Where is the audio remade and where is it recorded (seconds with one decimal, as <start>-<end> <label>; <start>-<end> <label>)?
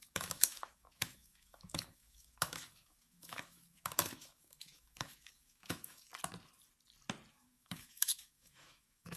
0.0-6.1 remade; 6.1-7.3 recorded; 7.3-9.2 remade